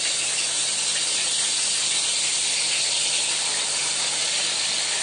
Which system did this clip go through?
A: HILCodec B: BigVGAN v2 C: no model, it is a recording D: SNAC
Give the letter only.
C